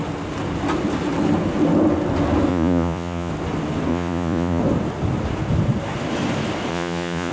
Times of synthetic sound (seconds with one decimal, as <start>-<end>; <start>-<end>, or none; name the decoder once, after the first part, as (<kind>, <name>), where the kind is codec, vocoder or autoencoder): 2.5-3.3 (vocoder, Vocos); 3.9-4.6; 6.7-7.3